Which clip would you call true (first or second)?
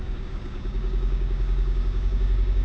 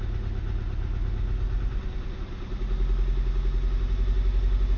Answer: second